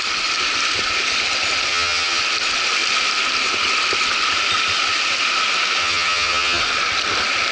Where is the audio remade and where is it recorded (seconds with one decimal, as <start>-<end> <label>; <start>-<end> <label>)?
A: 0.0-1.7 recorded; 1.7-2.2 remade; 2.2-5.8 recorded; 5.8-6.6 remade; 6.6-7.5 recorded